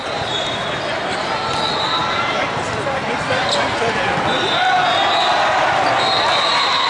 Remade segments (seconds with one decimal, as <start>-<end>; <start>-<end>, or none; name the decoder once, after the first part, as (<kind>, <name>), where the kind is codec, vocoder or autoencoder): none